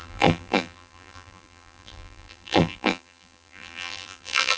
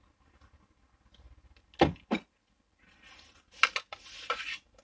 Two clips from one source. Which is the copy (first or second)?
first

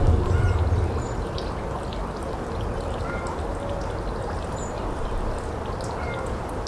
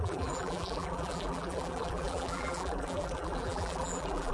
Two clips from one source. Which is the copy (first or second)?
second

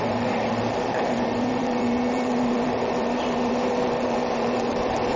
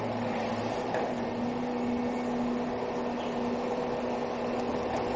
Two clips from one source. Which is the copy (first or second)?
first